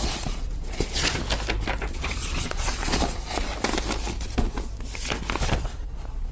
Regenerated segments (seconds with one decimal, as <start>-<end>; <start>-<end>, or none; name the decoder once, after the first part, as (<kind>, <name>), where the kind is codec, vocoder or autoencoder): 0.0-1.2 (vocoder, Vocos); 1.9-3.5; 5.6-6.3